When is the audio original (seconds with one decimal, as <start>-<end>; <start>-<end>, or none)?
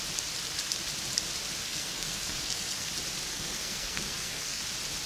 0.0-1.6; 2.9-3.3; 4.6-5.1